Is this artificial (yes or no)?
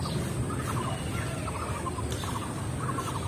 no